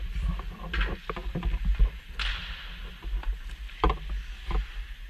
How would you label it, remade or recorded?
recorded